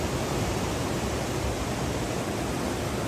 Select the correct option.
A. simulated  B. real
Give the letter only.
B